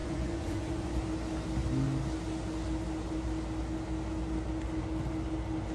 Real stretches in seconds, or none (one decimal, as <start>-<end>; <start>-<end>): 1.0-5.7